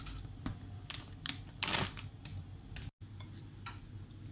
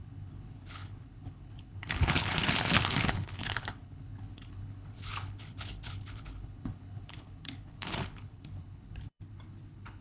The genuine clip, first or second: first